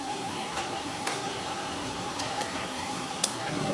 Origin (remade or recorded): remade